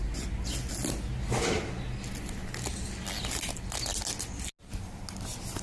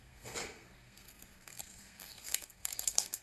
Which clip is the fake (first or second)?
second